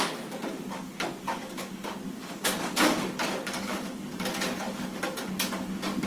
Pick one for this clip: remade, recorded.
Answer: remade